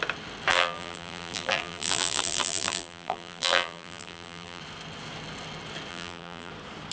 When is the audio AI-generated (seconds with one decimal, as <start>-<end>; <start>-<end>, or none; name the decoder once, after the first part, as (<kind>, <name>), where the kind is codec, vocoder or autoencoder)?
0.5-4.6 (vocoder, BigVGAN v2); 5.9-6.5